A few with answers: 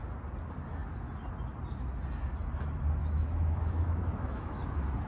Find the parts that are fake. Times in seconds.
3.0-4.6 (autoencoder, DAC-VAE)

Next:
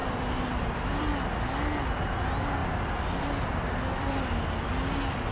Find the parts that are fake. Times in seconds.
0.0-1.2 (vocoder, BigVGAN v2); 2.6-4.7

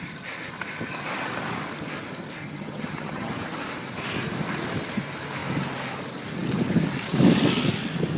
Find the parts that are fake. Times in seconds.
2.4-3.3 (vocoder, HiFi-GAN)

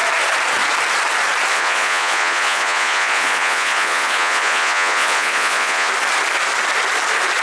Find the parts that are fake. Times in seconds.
1.5-5.9 (vocoder, Vocos)